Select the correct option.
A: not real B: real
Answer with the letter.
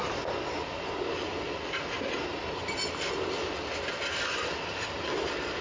B